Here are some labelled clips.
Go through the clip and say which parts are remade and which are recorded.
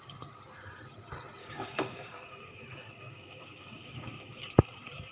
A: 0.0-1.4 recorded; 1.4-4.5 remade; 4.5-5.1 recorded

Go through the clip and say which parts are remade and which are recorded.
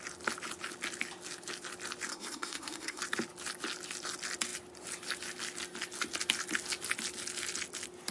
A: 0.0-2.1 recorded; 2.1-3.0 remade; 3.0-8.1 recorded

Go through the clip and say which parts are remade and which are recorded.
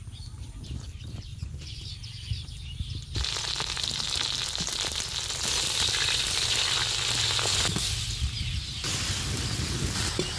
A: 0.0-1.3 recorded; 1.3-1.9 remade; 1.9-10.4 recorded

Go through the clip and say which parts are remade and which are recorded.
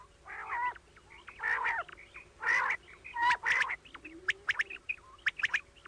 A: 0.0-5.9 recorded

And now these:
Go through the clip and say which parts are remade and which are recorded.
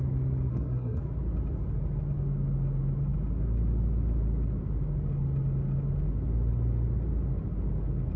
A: 0.0-0.5 recorded; 0.5-1.0 remade; 1.0-8.2 recorded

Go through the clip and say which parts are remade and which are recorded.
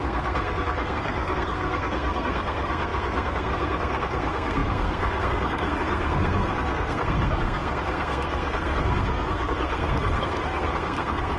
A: 0.0-11.4 remade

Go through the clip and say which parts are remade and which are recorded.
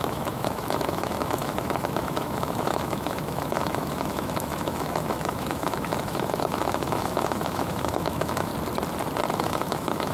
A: 0.0-8.5 remade; 8.5-9.4 recorded; 9.4-10.1 remade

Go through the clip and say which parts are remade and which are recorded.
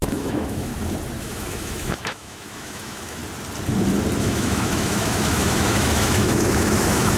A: 0.0-0.7 remade; 0.7-1.2 recorded; 1.2-3.2 remade; 3.2-4.2 recorded; 4.2-7.2 remade